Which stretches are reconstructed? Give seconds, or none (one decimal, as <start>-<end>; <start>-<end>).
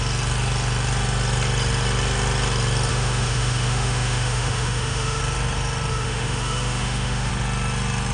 2.9-5.2; 5.9-7.3